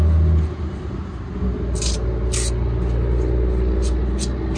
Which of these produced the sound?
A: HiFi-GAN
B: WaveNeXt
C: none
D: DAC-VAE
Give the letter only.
C